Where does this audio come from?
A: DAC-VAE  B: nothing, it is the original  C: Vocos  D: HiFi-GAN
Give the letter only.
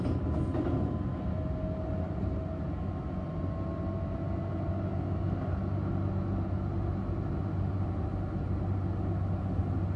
B